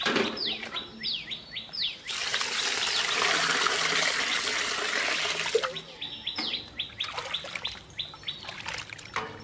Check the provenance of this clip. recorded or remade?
recorded